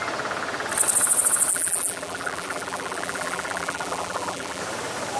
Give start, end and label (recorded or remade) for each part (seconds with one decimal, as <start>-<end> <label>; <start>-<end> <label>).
0.0-1.5 recorded; 1.5-4.6 remade; 4.6-5.2 recorded